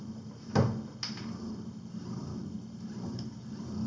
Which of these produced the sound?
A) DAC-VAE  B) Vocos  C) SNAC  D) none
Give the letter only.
D